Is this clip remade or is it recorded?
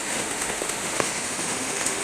remade